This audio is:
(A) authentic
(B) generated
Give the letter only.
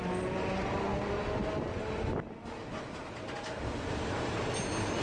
A